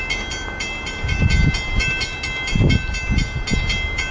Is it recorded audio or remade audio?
recorded